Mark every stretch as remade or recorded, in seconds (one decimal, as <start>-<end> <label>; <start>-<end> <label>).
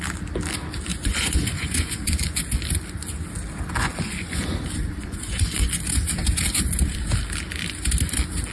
0.0-0.9 recorded; 0.9-2.4 remade; 2.4-3.8 recorded; 3.8-4.5 remade; 4.5-5.0 recorded; 5.0-5.7 remade; 5.7-8.5 recorded